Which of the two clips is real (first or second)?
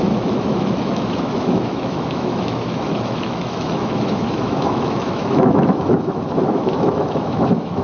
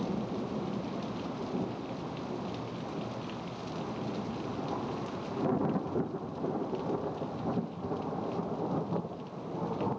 second